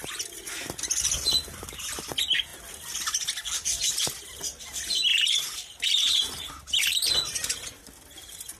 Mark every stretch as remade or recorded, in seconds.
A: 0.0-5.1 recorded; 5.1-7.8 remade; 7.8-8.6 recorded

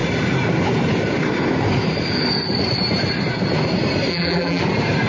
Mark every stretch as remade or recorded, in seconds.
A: 0.0-4.1 recorded; 4.1-4.6 remade; 4.6-5.1 recorded

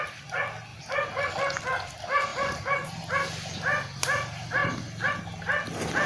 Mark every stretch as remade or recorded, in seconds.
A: 0.0-0.7 recorded; 0.7-1.3 remade; 1.3-2.3 recorded; 2.3-3.0 remade; 3.0-6.1 recorded

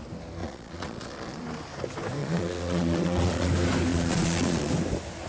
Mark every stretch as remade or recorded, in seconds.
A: 0.0-0.4 recorded; 0.4-1.4 remade; 1.4-2.2 recorded; 2.2-3.5 remade; 3.5-3.9 recorded; 3.9-4.7 remade; 4.7-5.3 recorded

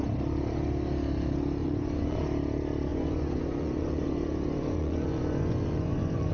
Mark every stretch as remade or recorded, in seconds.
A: 0.0-1.6 recorded; 1.6-2.2 remade; 2.2-2.9 recorded; 2.9-6.3 remade

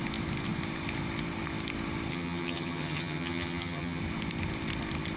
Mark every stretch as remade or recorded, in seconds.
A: 0.0-2.1 recorded; 2.1-4.0 remade; 4.0-5.2 recorded